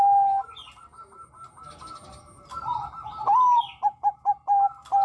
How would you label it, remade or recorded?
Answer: recorded